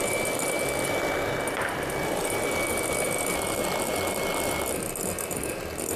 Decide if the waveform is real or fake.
real